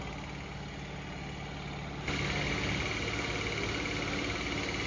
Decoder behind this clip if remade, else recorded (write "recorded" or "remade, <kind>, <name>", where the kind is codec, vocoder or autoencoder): recorded